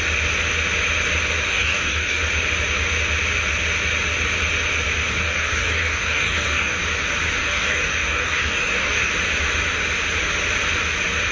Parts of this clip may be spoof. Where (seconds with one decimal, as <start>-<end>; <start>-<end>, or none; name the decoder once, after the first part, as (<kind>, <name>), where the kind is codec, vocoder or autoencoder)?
1.5-2.2 (codec, DAC); 5.1-6.8; 7.4-9.1

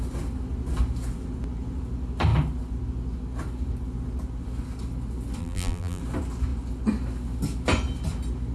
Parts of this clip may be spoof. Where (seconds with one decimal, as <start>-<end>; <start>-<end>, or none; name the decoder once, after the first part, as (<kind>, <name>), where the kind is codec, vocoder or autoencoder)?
5.4-6.0 (vocoder, BigVGAN v2)